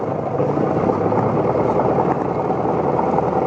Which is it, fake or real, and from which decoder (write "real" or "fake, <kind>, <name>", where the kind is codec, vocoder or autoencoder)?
real